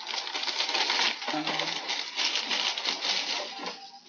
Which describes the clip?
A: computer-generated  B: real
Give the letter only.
B